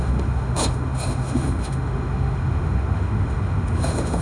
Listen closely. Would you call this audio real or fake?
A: fake